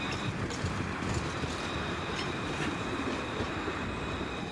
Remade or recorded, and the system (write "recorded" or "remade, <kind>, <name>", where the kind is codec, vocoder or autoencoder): remade, vocoder, BigVGAN v2